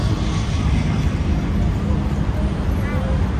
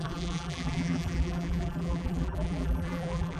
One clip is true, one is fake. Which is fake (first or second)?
second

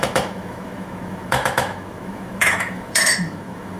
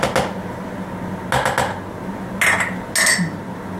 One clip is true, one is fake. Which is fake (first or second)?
first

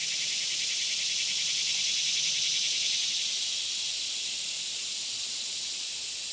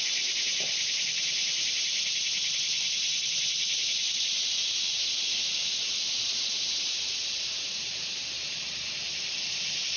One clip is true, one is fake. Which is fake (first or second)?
second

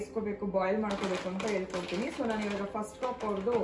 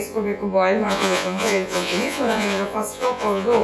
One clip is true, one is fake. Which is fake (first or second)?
second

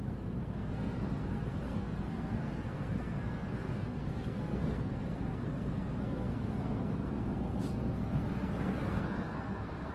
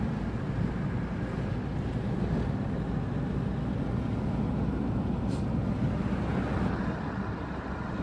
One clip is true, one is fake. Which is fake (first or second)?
first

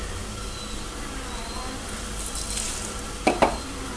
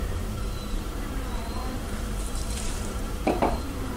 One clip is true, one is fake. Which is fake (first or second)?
second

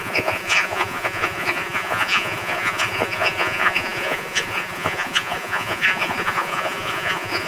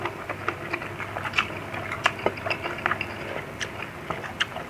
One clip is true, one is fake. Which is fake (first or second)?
first